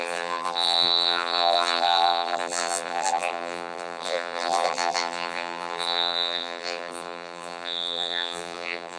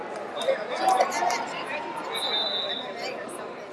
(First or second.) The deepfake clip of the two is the first